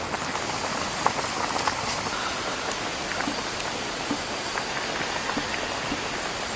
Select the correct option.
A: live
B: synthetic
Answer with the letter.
A